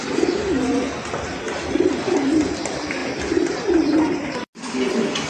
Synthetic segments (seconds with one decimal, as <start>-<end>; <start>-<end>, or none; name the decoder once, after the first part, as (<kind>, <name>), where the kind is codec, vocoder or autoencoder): 3.0-4.5 (vocoder, BigVGAN v2)